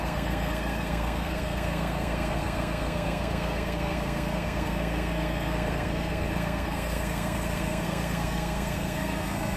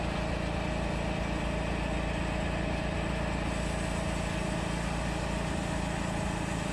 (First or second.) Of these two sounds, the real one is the second